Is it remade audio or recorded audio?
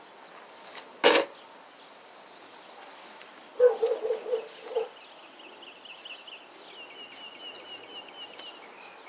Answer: recorded